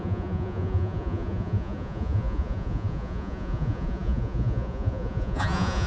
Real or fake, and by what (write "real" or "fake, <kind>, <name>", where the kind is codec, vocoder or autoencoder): fake, vocoder, Vocos